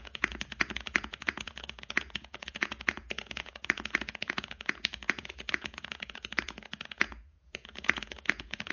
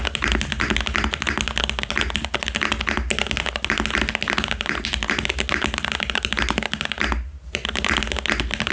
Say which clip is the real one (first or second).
second